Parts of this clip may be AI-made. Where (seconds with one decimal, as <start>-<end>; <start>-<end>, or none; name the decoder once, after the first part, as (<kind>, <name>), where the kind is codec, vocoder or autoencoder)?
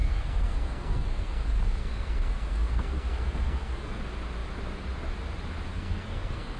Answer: 0.0-4.0 (codec, SNAC); 5.7-6.6